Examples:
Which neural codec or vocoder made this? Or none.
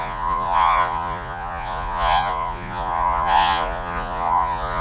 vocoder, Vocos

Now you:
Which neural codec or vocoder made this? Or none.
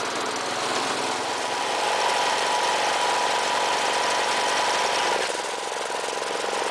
none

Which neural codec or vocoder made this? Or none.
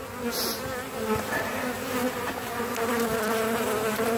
none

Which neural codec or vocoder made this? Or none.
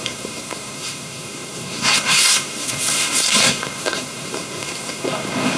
codec, SNAC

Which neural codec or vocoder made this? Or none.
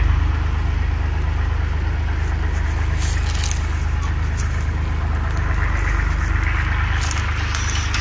none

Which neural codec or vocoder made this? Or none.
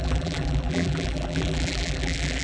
vocoder, BigVGAN v2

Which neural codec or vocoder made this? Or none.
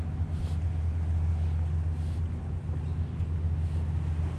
none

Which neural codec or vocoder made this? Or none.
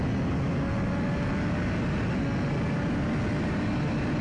none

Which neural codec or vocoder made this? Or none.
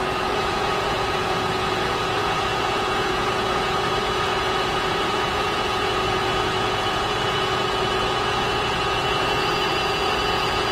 vocoder, Vocos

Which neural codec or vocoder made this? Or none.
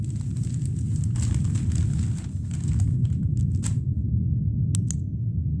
none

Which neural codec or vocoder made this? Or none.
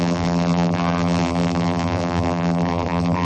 vocoder, BigVGAN v2